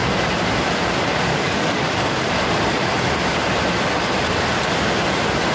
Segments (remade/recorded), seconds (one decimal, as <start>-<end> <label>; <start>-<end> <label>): 0.0-1.3 recorded; 1.3-2.3 remade; 2.3-5.5 recorded